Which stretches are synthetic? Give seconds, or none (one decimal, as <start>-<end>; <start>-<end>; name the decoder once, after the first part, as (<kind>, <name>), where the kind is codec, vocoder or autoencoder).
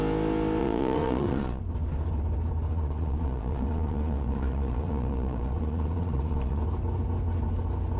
0.6-1.6 (vocoder, Vocos); 2.7-6.6